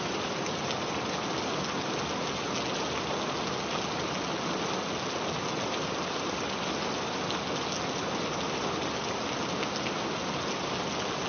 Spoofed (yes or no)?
no